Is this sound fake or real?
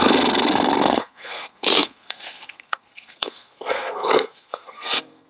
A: fake